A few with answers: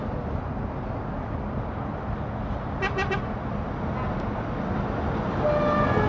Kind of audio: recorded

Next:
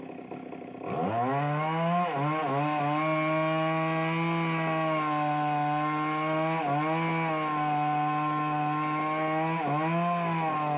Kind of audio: recorded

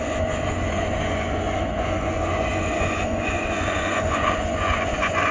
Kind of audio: remade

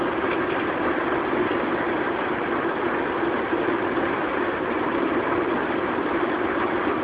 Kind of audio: recorded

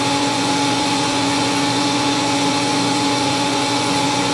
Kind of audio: remade